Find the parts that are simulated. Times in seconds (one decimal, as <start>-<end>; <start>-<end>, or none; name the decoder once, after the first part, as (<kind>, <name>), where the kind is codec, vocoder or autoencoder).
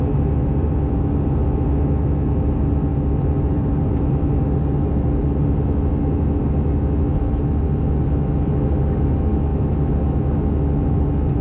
2.9-4.4 (vocoder, BigVGAN v2)